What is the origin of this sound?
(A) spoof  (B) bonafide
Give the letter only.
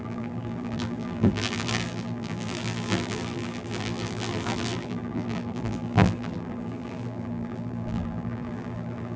A